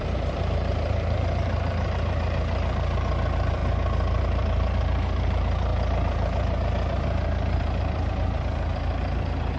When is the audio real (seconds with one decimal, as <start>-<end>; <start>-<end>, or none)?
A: 3.6-4.2